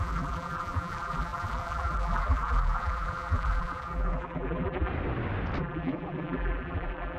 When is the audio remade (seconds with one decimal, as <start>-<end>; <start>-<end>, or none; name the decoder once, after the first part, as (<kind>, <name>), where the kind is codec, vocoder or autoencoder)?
0.0-4.9 (vocoder, BigVGAN v2); 5.6-7.2